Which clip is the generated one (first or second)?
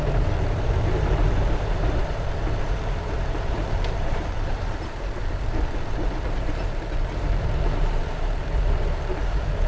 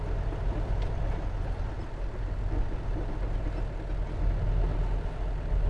first